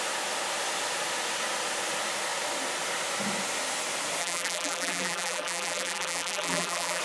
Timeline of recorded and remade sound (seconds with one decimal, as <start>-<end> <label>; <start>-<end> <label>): 0.0-4.2 recorded; 4.2-7.0 remade